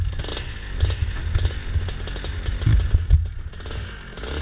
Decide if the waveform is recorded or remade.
recorded